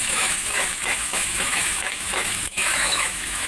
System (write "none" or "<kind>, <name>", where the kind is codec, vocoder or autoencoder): autoencoder, DAC-VAE